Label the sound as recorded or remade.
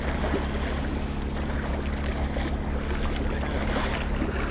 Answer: recorded